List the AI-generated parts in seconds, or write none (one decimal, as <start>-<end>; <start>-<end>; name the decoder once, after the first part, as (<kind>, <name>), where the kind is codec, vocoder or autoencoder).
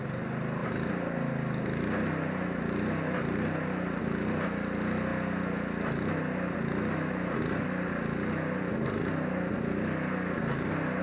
none